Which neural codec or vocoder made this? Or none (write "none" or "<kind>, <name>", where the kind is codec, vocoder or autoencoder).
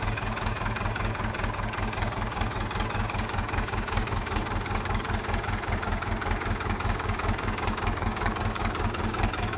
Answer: codec, DAC